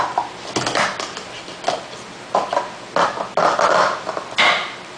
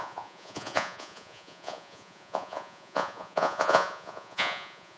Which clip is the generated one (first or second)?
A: second